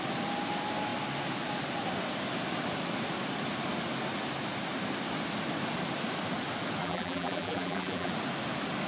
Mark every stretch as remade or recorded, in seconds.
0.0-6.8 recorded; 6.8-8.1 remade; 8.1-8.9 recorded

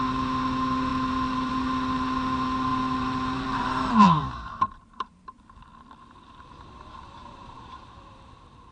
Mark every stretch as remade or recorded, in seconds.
0.0-8.7 remade

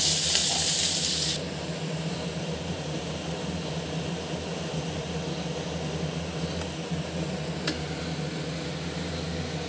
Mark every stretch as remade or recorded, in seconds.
0.0-0.4 recorded; 0.4-5.0 remade; 5.0-9.7 recorded

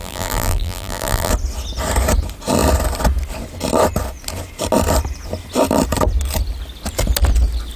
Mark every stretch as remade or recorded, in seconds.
0.0-1.3 remade; 1.3-7.8 recorded